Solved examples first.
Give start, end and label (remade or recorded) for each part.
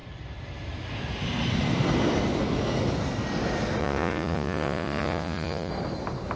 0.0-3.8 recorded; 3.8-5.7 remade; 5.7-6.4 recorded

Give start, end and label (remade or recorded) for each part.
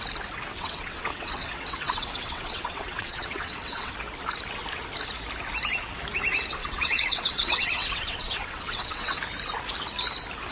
0.0-0.5 recorded; 0.5-3.9 remade; 3.9-6.6 recorded; 6.6-9.2 remade; 9.2-10.5 recorded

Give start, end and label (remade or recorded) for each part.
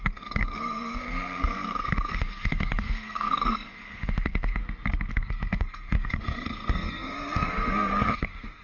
0.0-4.6 remade; 4.6-5.1 recorded; 5.1-8.6 remade